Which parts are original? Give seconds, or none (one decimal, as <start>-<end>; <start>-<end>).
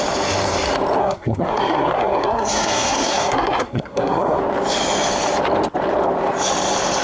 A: 0.0-1.0; 4.4-7.0